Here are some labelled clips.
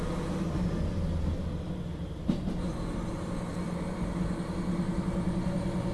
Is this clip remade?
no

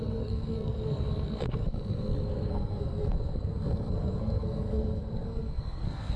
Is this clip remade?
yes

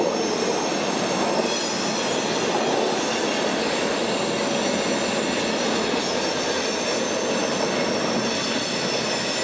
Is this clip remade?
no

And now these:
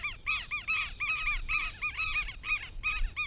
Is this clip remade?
no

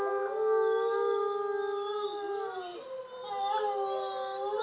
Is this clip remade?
no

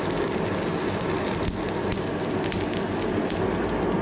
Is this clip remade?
no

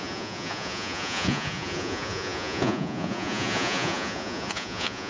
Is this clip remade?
yes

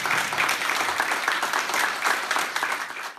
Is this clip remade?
no